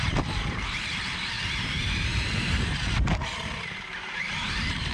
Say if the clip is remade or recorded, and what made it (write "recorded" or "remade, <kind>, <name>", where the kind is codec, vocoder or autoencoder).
remade, vocoder, BigVGAN v2